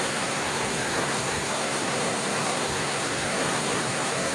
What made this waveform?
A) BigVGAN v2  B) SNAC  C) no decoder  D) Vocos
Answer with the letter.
B